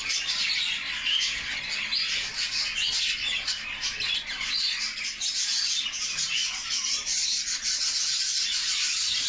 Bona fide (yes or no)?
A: yes